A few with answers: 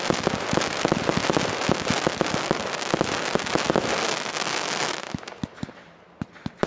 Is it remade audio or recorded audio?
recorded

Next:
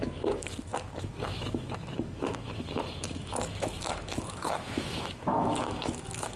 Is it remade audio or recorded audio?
remade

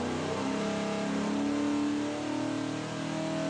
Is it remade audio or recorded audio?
recorded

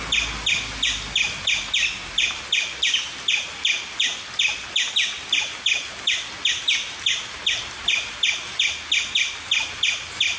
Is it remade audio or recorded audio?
recorded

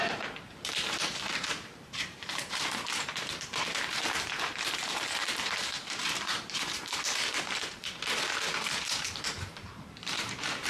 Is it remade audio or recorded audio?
remade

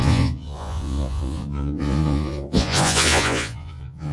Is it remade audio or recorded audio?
remade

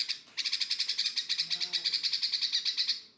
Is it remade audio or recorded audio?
recorded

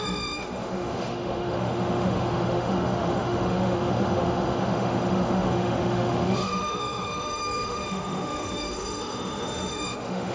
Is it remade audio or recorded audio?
remade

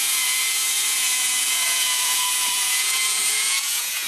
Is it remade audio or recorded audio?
remade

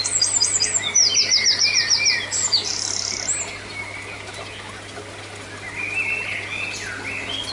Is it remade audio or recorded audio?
recorded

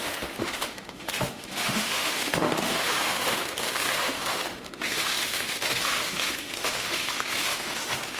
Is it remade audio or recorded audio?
remade